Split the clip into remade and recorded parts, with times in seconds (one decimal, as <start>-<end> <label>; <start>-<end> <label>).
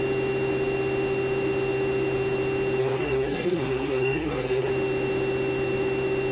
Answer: 0.0-2.8 recorded; 2.8-4.7 remade; 4.7-6.3 recorded